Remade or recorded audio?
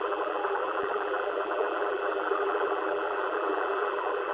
remade